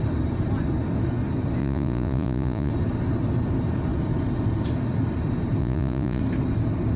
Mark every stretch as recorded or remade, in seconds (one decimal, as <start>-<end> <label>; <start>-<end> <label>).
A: 0.0-1.6 recorded; 1.6-2.7 remade; 2.7-5.6 recorded; 5.6-6.2 remade; 6.2-7.0 recorded